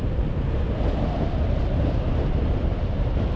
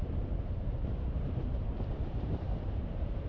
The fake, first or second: second